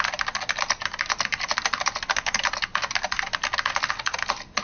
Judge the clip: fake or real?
real